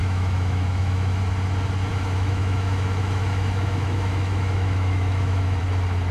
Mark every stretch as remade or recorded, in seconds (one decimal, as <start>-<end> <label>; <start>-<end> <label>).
0.0-1.2 remade; 1.2-1.9 recorded; 1.9-5.6 remade; 5.6-6.1 recorded